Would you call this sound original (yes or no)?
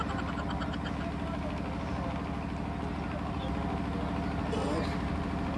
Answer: yes